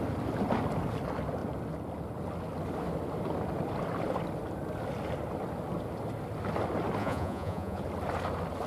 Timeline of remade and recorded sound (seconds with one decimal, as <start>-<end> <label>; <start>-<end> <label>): 0.0-7.0 recorded; 7.0-7.8 remade; 7.8-8.7 recorded